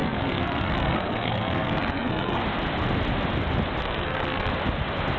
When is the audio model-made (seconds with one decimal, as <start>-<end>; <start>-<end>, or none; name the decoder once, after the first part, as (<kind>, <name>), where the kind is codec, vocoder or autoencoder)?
0.0-2.4 (codec, SNAC); 3.8-4.5